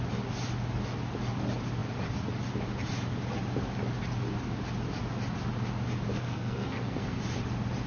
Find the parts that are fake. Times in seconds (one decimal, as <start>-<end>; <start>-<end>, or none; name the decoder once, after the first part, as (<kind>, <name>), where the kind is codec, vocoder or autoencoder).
6.1-7.2 (codec, SNAC)